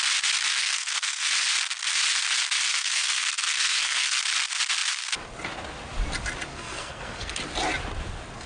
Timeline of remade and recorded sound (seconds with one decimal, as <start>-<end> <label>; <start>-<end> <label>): 0.0-0.5 recorded; 0.5-1.3 remade; 1.3-2.7 recorded; 2.7-4.2 remade; 4.2-6.5 recorded; 6.5-7.4 remade; 7.4-8.5 recorded